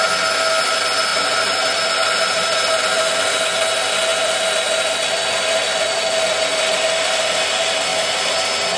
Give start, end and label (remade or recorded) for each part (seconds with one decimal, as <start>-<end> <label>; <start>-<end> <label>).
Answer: 0.0-1.1 recorded; 1.1-1.7 remade; 1.7-8.8 recorded